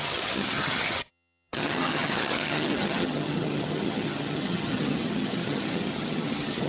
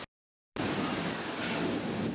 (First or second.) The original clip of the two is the second